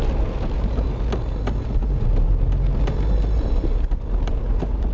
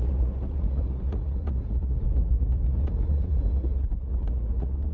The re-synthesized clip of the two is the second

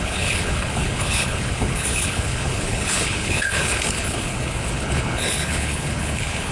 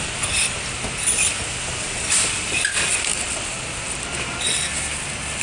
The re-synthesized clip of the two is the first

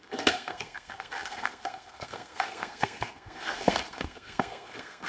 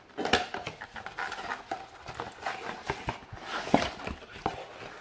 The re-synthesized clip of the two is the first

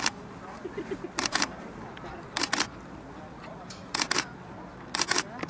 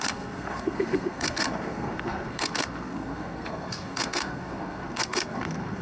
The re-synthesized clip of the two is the second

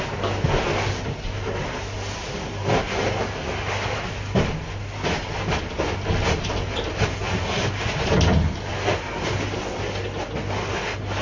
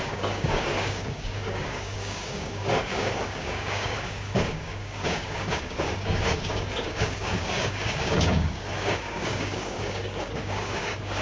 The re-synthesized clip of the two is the second